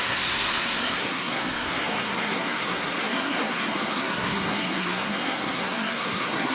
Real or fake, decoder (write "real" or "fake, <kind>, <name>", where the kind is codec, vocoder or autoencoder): fake, codec, SNAC